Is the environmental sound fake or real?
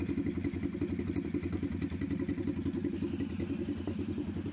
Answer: real